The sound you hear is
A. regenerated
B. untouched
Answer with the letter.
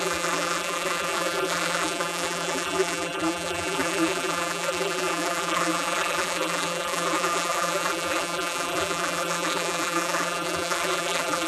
A